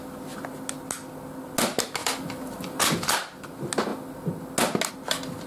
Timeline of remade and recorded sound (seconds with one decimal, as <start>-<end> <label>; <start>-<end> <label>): 0.0-2.0 recorded; 2.0-2.8 remade; 2.8-5.5 recorded